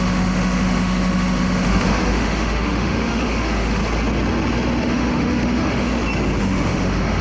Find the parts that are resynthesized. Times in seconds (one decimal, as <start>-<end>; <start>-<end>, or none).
0.0-3.8; 4.8-5.9; 6.4-7.2